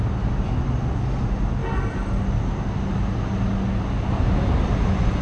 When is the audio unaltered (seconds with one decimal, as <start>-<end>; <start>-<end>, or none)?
0.0-5.2